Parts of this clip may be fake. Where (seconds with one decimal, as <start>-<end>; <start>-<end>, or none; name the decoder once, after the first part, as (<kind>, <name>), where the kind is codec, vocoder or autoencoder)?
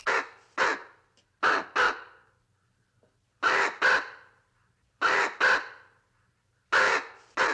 none